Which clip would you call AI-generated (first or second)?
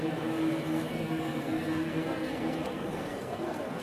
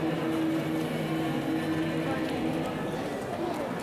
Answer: first